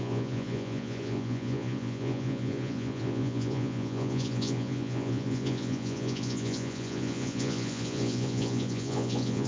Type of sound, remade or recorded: remade